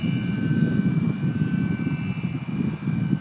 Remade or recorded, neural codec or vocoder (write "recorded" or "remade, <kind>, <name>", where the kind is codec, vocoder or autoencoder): recorded